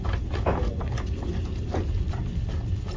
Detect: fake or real real